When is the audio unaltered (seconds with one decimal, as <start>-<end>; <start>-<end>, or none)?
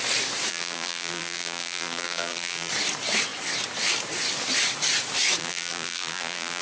0.0-0.5; 2.7-5.4